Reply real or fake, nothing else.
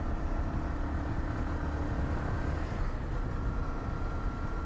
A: real